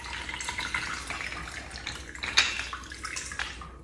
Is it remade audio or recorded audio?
recorded